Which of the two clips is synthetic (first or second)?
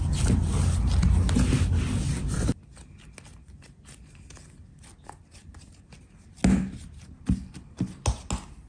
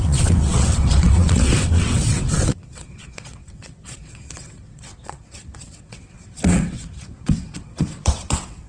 second